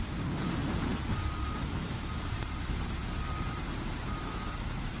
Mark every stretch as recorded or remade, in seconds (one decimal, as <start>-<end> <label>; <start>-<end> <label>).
0.0-0.6 remade; 0.6-1.8 recorded; 1.8-3.0 remade; 3.0-4.1 recorded; 4.1-5.0 remade